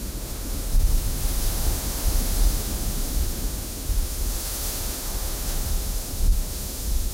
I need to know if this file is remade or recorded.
remade